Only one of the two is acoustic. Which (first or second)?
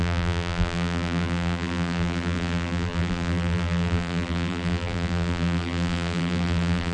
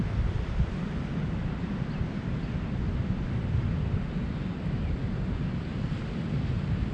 second